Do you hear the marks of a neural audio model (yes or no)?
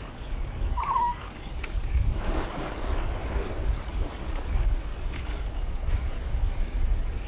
yes